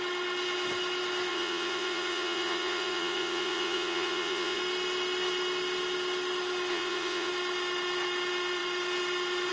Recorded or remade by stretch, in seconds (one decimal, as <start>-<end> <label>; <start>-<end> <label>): 0.0-1.3 recorded; 1.3-4.6 remade; 4.6-6.7 recorded; 6.7-7.3 remade; 7.3-9.5 recorded